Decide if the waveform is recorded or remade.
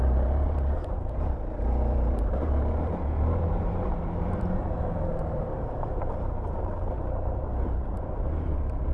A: remade